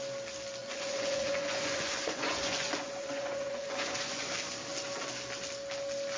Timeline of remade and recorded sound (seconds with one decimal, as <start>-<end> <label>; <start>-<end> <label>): 0.0-0.6 recorded; 0.6-4.3 remade; 4.3-6.2 recorded